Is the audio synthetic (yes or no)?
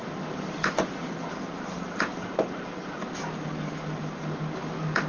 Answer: no